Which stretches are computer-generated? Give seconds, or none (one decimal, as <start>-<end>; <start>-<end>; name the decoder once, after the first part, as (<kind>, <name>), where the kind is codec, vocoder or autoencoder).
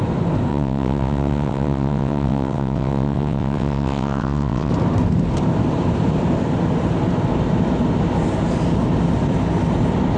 0.5-4.7 (vocoder, WaveNeXt)